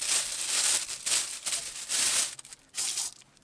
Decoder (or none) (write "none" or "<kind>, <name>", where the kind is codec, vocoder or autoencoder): none